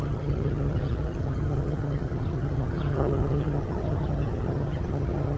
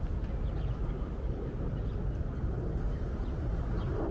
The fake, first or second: first